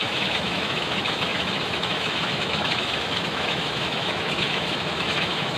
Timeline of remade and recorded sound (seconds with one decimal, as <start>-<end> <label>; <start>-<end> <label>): 0.0-5.6 remade